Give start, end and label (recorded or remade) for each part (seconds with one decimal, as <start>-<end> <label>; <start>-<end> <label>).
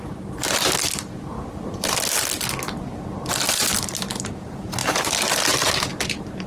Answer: 0.0-6.5 recorded